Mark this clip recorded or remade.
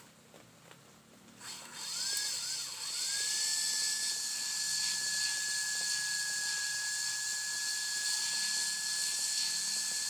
recorded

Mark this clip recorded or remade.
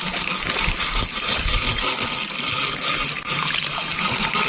recorded